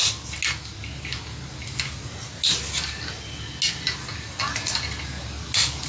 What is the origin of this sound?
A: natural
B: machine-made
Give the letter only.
A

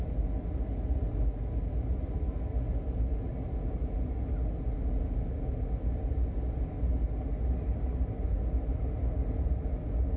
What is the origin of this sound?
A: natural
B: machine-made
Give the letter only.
A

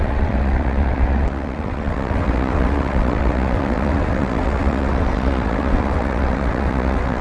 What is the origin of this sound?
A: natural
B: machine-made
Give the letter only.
B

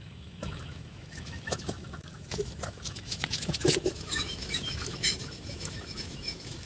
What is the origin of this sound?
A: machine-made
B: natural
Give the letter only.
A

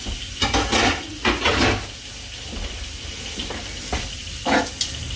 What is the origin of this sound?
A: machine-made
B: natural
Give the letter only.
B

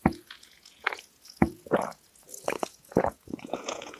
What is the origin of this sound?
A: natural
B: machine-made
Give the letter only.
B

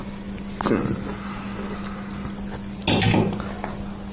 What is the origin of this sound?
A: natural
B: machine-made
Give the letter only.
A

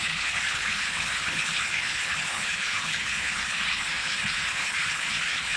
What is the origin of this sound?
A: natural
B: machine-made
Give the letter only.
B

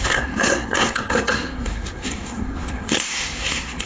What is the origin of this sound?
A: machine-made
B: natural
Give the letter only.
A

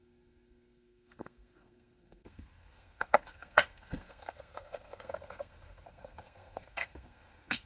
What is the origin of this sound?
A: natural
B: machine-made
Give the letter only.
B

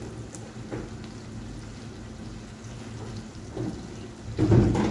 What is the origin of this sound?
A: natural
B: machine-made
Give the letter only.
A